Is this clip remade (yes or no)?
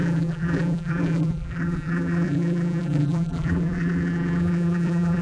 yes